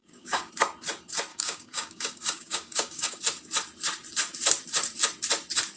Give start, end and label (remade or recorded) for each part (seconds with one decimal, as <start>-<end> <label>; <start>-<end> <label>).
0.0-0.5 remade; 0.5-1.3 recorded; 1.3-3.2 remade; 3.2-5.8 recorded